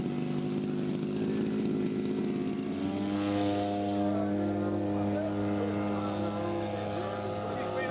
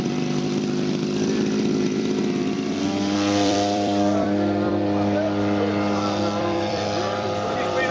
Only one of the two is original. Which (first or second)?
first